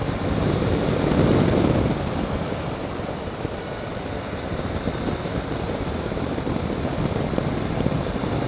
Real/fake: real